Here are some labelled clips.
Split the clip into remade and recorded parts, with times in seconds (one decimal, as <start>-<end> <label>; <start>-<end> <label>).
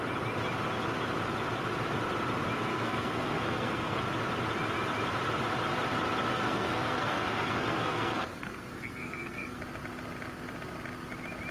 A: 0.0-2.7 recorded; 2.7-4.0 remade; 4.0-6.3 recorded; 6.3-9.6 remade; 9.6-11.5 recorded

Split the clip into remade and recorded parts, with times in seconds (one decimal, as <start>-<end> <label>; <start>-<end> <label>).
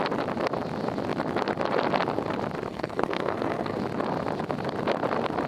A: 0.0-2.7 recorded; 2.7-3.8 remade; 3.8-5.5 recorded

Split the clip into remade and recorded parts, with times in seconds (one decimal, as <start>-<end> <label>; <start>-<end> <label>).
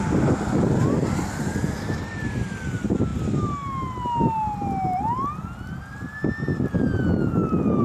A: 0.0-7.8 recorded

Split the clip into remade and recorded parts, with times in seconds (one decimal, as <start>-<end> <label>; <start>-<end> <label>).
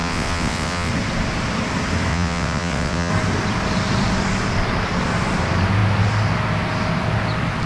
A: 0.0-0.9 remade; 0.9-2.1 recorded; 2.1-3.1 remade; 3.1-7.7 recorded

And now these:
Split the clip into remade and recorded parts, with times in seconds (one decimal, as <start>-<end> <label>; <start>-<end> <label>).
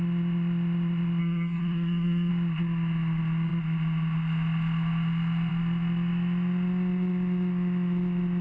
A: 0.0-1.2 recorded; 1.2-2.3 remade; 2.3-8.4 recorded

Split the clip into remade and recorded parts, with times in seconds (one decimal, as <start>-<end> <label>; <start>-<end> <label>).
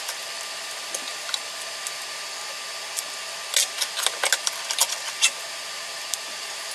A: 0.0-6.7 recorded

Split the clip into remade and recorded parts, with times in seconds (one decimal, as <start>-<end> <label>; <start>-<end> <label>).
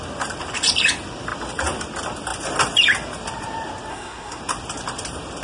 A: 0.0-3.9 recorded; 3.9-4.4 remade; 4.4-5.4 recorded